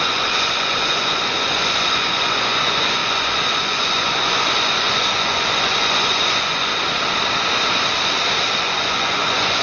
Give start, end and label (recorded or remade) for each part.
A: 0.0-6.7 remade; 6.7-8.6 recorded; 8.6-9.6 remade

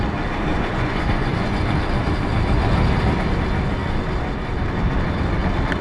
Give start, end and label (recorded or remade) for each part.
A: 0.0-0.5 recorded; 0.5-1.6 remade; 1.6-5.8 recorded

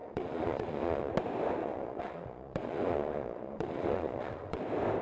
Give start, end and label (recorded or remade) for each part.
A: 0.0-1.1 remade; 1.1-1.6 recorded; 1.6-4.6 remade; 4.6-5.0 recorded

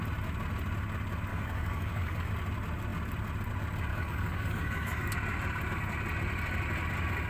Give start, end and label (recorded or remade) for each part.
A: 0.0-1.3 recorded; 1.3-2.3 remade; 2.3-3.9 recorded; 3.9-5.1 remade; 5.1-7.3 recorded

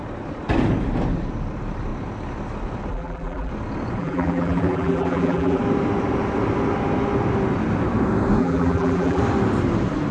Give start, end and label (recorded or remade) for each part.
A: 0.0-2.9 recorded; 2.9-3.5 remade; 3.5-4.0 recorded; 4.0-5.6 remade; 5.6-8.4 recorded; 8.4-9.2 remade; 9.2-10.1 recorded

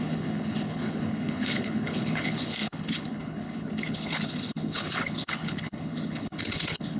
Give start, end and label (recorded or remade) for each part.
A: 0.0-7.0 remade

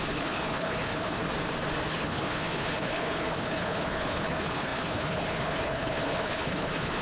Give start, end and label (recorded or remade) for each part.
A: 0.0-1.2 remade; 1.2-1.9 recorded; 1.9-7.0 remade